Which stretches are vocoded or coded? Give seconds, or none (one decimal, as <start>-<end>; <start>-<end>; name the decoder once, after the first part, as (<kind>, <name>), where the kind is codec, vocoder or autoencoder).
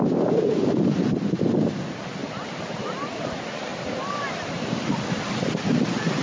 2.2-3.2 (vocoder, BigVGAN v2)